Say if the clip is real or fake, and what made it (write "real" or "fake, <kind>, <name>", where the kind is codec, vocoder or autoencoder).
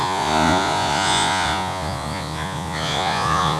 fake, vocoder, Vocos